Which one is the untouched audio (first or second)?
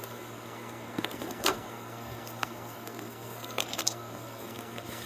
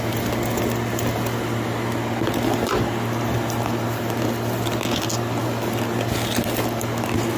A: second